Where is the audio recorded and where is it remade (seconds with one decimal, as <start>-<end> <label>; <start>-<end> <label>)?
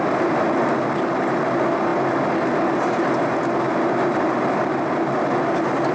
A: 0.0-5.9 recorded